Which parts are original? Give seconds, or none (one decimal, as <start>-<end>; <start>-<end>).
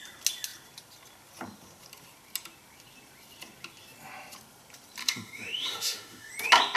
0.0-5.0; 6.3-6.8